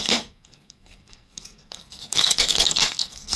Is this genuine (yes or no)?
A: no